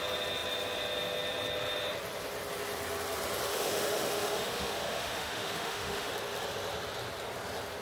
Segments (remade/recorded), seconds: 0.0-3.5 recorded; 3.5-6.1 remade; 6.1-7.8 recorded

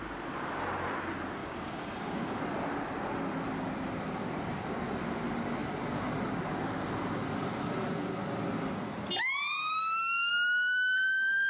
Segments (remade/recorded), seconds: 0.0-1.4 recorded; 1.4-2.4 remade; 2.4-9.6 recorded; 9.6-10.3 remade; 10.3-11.5 recorded

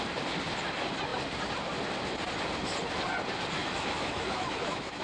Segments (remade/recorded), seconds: 0.0-3.6 recorded; 3.6-5.0 remade

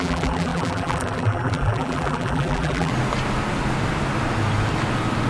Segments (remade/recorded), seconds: 0.0-2.9 remade; 2.9-5.3 recorded

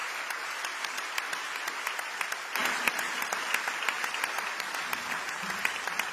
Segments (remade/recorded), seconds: 0.0-1.7 recorded; 1.7-6.1 remade

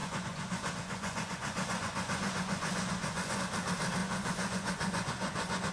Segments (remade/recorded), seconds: 0.0-3.4 remade; 3.4-4.0 recorded; 4.0-5.7 remade

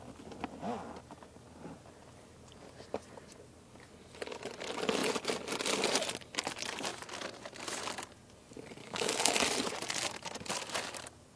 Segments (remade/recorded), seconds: 0.0-8.8 recorded; 8.8-9.4 remade; 9.4-11.4 recorded

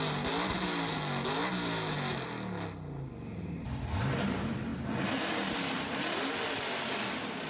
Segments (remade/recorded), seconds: 0.0-7.5 recorded